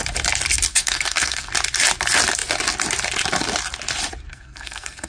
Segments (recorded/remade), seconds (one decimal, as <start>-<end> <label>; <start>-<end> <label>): 0.0-0.7 recorded; 0.7-1.5 remade; 1.5-4.3 recorded; 4.3-5.1 remade

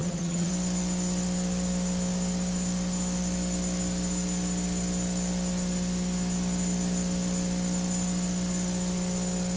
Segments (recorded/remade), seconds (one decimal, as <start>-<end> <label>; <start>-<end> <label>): 0.0-0.5 remade; 0.5-9.6 recorded

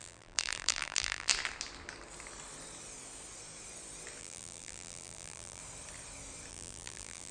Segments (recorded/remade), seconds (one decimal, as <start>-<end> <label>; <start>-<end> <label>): 0.0-1.3 remade; 1.3-4.2 recorded; 4.2-5.6 remade; 5.6-6.5 recorded; 6.5-7.3 remade

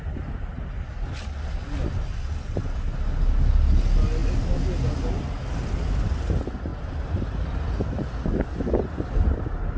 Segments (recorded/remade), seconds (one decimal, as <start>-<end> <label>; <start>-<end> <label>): 0.0-9.8 recorded

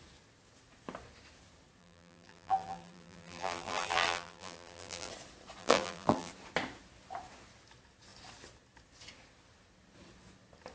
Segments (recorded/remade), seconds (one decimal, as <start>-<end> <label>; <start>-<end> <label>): 0.0-1.8 recorded; 1.8-5.1 remade; 5.1-5.6 recorded; 5.6-6.3 remade; 6.3-10.7 recorded

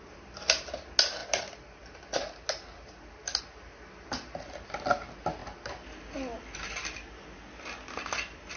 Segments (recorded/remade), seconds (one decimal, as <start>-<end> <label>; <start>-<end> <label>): 0.0-8.6 recorded

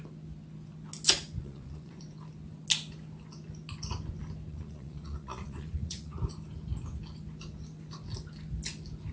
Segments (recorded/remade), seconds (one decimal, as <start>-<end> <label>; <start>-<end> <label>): 0.0-1.4 recorded; 1.4-2.0 remade; 2.0-4.5 recorded; 4.5-6.2 remade; 6.2-9.1 recorded